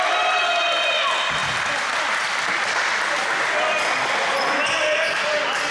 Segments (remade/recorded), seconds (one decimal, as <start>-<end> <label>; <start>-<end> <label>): 0.0-1.4 recorded; 1.4-3.1 remade; 3.1-5.7 recorded